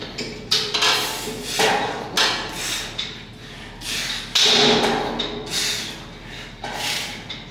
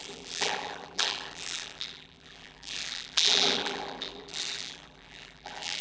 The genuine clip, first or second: first